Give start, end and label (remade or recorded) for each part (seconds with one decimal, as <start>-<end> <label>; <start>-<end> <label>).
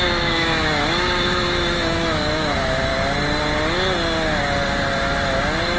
0.0-2.9 remade; 2.9-5.8 recorded